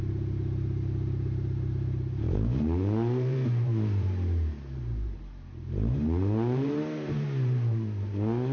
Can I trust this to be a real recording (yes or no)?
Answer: no